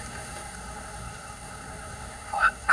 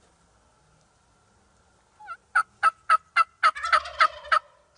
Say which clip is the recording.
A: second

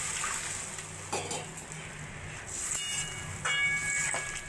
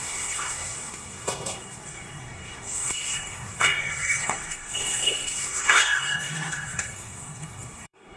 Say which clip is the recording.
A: first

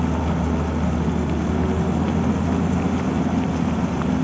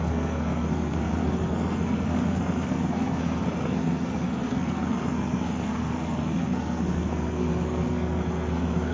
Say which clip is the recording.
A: first